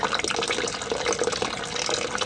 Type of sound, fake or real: real